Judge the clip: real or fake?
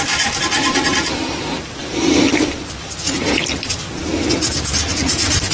real